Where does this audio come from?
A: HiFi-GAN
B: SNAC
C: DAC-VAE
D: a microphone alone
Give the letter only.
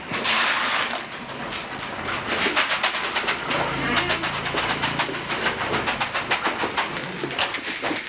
D